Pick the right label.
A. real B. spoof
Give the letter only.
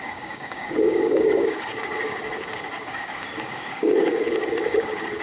B